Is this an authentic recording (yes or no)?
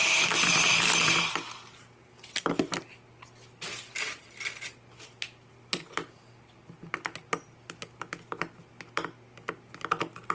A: yes